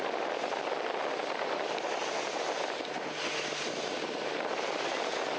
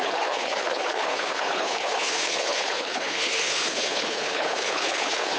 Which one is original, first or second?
first